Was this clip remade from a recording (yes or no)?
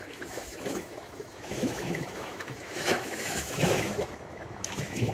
yes